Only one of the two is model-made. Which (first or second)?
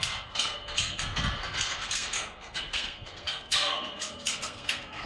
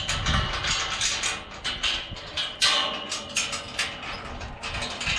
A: first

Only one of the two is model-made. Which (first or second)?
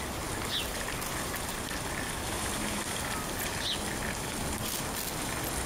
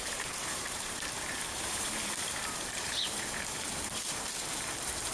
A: second